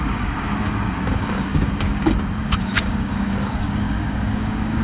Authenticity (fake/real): fake